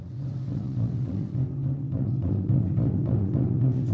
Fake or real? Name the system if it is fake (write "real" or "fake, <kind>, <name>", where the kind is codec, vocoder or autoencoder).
fake, vocoder, WaveNeXt